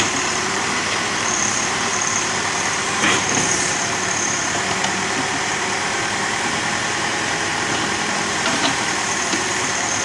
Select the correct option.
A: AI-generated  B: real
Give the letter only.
A